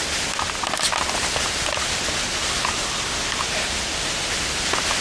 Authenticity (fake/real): real